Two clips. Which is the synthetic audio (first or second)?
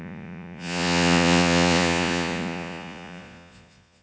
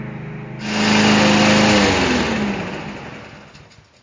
first